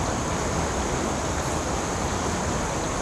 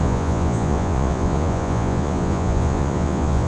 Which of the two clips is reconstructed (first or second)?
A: second